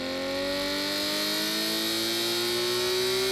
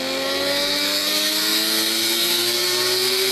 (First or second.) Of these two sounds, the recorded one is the first